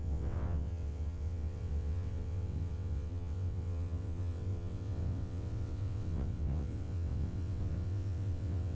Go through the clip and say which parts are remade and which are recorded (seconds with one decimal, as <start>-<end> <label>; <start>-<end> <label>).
0.0-8.7 remade